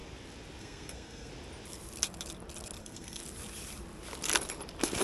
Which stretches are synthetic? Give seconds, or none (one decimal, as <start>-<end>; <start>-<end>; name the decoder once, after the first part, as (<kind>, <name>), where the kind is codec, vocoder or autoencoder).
0.6-1.3 (codec, SNAC); 2.8-3.2